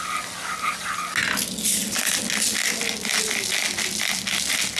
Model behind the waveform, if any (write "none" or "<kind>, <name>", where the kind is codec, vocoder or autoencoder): none